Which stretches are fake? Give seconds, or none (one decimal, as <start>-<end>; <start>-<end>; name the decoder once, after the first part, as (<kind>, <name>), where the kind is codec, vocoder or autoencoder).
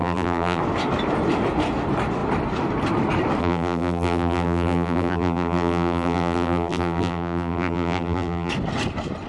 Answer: 0.0-0.6 (vocoder, BigVGAN v2); 3.4-8.5